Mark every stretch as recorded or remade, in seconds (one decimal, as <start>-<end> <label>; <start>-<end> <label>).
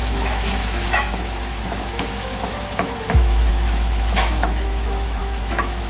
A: 0.0-5.9 remade